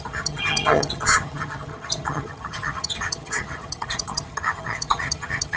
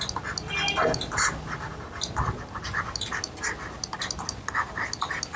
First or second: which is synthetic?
first